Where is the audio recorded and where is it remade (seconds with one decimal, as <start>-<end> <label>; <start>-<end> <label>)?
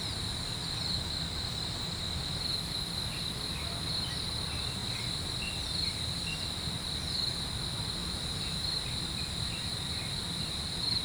0.0-8.0 recorded; 8.0-9.1 remade; 9.1-11.0 recorded